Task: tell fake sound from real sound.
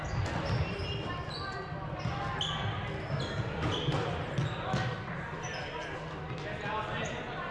real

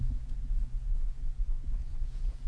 fake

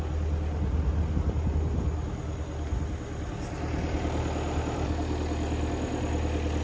real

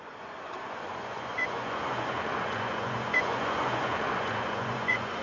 fake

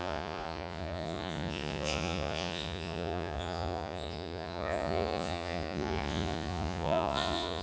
fake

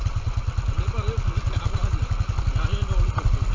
real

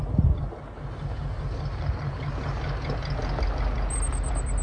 real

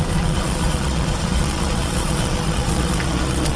fake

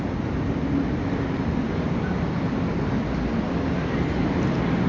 real